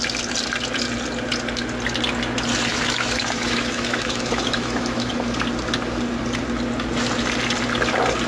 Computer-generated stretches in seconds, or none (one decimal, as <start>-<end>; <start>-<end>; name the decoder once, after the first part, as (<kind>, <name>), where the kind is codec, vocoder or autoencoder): 2.7-5.1 (autoencoder, DAC-VAE)